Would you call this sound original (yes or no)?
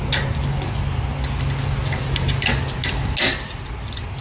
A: yes